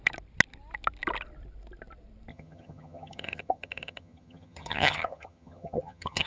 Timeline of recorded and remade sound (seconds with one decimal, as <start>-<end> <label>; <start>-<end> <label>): 0.0-2.3 recorded; 2.3-6.3 remade